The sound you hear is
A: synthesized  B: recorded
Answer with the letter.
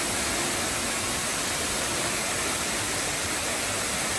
B